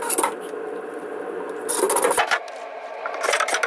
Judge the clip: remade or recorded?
recorded